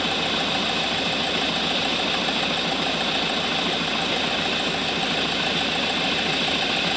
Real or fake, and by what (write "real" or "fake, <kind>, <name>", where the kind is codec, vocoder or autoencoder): real